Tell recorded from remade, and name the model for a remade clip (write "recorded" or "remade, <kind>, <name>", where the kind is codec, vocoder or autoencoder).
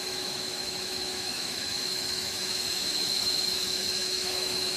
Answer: remade, autoencoder, DAC-VAE